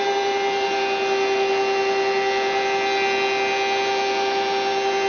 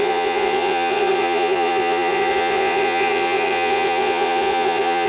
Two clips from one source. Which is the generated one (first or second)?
second